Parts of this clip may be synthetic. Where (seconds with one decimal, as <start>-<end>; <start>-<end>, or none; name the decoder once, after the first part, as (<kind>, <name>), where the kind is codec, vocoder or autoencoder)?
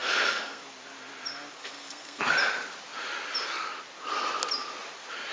0.0-0.6 (codec, SNAC); 1.6-2.2